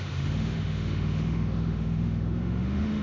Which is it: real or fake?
fake